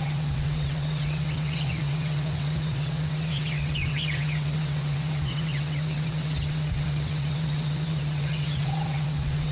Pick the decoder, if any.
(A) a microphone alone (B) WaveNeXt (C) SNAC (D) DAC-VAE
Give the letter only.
B